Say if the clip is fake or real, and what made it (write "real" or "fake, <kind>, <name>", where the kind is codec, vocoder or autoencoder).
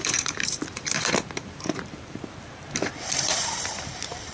fake, vocoder, BigVGAN v2